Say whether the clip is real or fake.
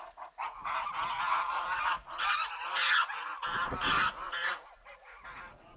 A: fake